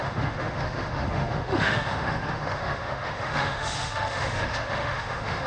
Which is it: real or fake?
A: fake